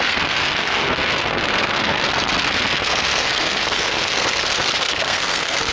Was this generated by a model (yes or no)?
yes